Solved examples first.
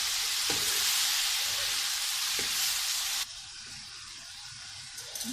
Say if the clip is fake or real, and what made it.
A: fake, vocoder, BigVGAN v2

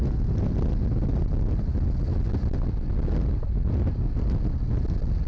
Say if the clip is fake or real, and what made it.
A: real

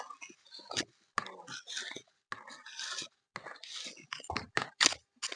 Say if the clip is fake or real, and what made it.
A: real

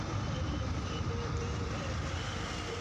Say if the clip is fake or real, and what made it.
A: real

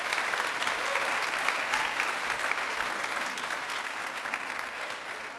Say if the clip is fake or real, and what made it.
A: real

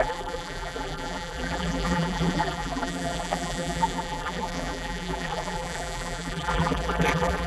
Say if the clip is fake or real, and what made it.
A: fake, vocoder, BigVGAN v2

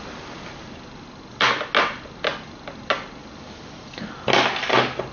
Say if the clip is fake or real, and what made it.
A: real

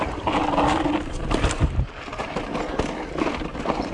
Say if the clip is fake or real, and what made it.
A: real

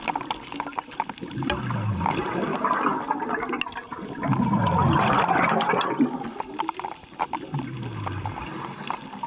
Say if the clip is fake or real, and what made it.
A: real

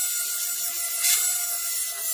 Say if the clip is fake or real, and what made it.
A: real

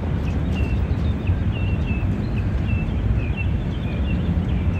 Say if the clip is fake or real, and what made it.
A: real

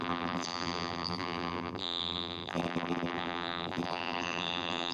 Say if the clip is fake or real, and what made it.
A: fake, vocoder, BigVGAN v2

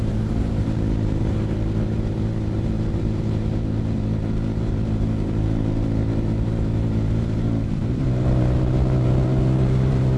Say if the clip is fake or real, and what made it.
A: fake, vocoder, BigVGAN v2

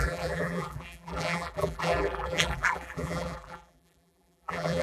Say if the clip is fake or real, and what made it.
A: fake, vocoder, BigVGAN v2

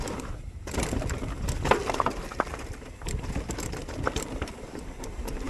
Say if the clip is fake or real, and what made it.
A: real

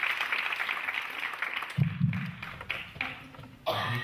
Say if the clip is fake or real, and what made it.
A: real